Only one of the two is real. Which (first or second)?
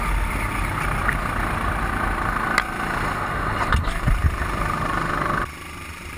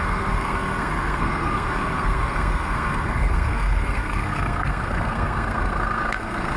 first